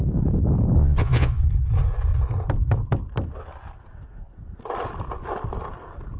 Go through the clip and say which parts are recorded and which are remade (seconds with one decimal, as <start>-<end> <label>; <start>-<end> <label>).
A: 0.0-0.8 recorded; 0.8-1.4 remade; 1.4-6.2 recorded